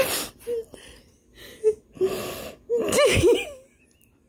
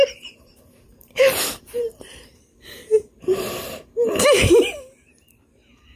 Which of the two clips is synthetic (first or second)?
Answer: second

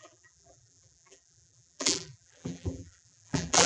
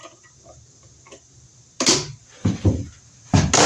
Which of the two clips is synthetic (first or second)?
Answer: first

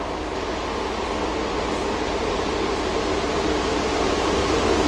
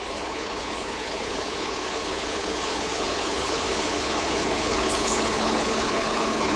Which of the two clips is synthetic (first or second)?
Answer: second